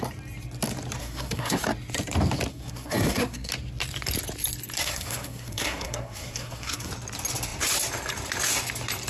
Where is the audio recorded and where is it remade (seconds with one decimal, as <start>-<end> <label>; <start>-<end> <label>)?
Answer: 0.0-1.0 recorded; 1.0-1.6 remade; 1.6-2.5 recorded; 2.5-3.5 remade; 3.5-4.8 recorded; 4.8-6.9 remade; 6.9-9.1 recorded